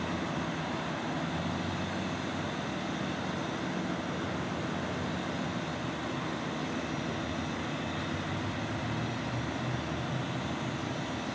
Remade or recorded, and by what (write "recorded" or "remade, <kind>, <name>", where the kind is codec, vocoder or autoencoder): recorded